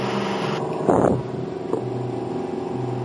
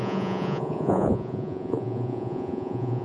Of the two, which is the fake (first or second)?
second